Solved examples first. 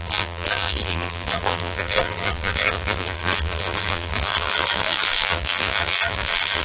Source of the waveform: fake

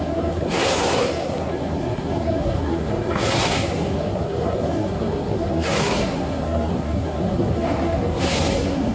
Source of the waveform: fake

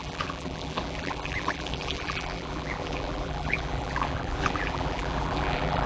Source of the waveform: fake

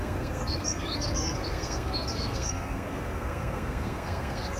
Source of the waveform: fake